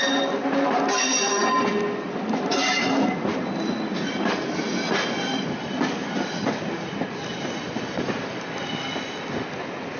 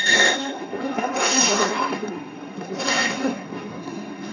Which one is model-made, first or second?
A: second